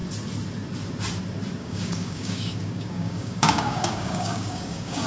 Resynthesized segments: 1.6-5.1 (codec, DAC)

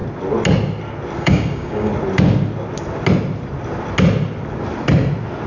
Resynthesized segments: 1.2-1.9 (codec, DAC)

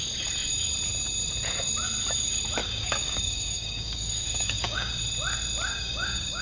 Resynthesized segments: 2.6-4.9 (codec, DAC); 5.7-6.4

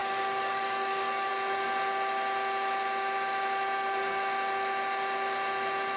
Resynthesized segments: 0.0-1.3 (codec, DAC)